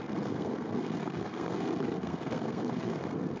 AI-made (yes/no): yes